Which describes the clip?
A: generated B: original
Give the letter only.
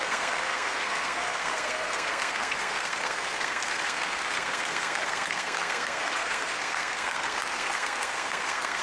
A